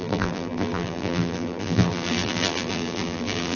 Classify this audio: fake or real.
fake